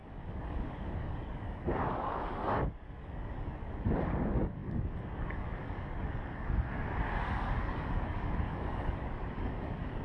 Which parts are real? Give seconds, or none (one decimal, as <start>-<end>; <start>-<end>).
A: none